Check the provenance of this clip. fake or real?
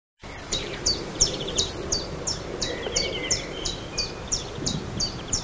fake